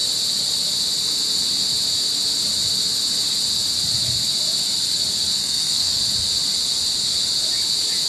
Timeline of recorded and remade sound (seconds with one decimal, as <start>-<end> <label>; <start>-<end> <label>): 0.0-5.4 recorded; 5.4-6.0 remade; 6.0-8.1 recorded